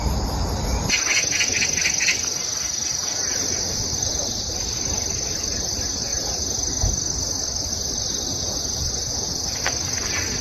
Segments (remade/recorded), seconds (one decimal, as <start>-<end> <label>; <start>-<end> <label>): 0.0-3.0 recorded; 3.0-4.2 remade; 4.2-6.1 recorded; 6.1-6.7 remade; 6.7-8.3 recorded; 8.3-9.6 remade; 9.6-10.4 recorded